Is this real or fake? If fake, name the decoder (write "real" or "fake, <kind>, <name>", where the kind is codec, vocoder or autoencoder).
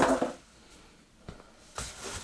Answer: real